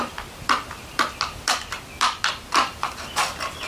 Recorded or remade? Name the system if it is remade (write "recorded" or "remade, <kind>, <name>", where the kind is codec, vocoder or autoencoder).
recorded